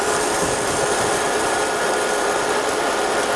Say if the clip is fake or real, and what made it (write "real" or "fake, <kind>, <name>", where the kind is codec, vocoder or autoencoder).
real